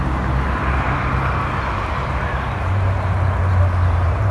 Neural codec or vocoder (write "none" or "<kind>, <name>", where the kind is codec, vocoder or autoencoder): none